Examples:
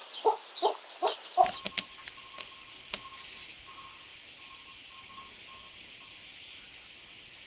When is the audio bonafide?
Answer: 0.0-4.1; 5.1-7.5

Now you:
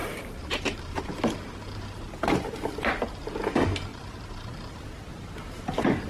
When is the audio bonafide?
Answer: 0.8-3.9; 4.7-6.1

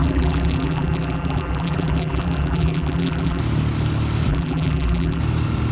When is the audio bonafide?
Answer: 3.4-4.3; 5.2-5.7

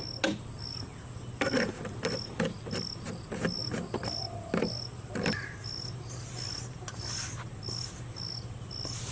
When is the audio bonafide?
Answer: 0.0-9.1